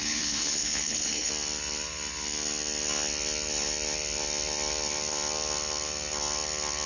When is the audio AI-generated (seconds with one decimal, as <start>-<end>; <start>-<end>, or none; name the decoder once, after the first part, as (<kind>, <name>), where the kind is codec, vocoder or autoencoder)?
0.0-1.3 (codec, HILCodec)